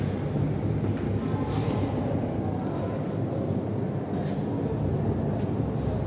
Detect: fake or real real